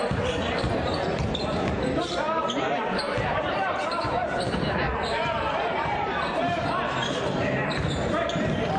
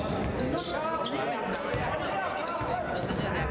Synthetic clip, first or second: first